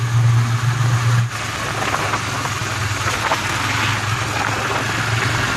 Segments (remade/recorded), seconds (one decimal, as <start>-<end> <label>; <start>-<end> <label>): 0.0-5.6 recorded